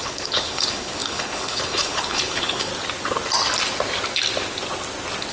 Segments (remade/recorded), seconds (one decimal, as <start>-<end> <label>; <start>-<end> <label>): 0.0-2.7 remade; 2.7-5.3 recorded